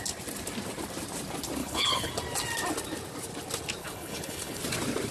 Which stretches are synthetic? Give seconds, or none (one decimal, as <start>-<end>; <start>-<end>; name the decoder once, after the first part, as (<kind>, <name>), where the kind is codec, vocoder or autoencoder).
1.6-2.1 (codec, HILCodec); 3.8-4.6